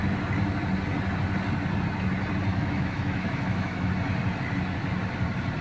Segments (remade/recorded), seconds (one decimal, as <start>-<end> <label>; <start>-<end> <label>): 0.0-2.5 recorded; 2.5-3.9 remade; 3.9-5.6 recorded